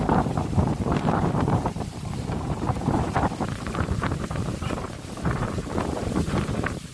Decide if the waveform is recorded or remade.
remade